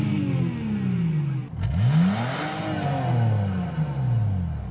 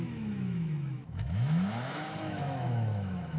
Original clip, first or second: first